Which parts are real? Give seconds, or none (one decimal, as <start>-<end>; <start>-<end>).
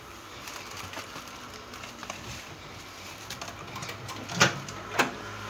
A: 0.0-5.5